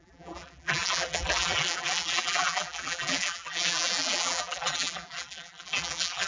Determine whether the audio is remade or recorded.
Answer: remade